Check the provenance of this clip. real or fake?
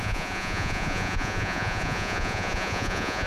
fake